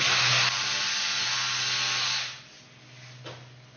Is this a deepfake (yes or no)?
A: no